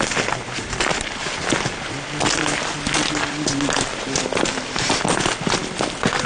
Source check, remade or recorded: recorded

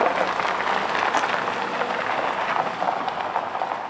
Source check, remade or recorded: recorded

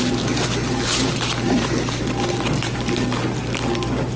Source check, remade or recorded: recorded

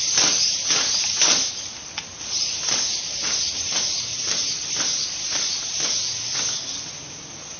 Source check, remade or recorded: recorded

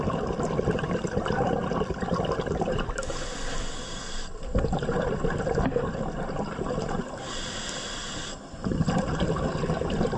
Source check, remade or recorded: recorded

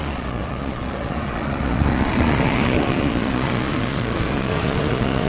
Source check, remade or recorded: remade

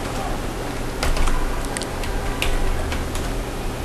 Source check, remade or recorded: recorded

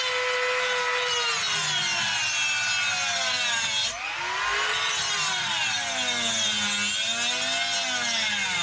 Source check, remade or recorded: recorded